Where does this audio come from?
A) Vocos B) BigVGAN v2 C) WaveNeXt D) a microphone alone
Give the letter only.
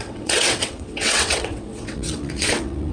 C